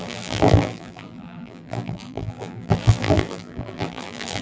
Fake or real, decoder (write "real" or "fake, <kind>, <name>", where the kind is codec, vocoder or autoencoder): fake, vocoder, BigVGAN v2